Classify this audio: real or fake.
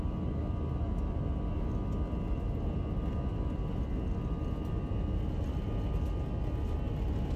real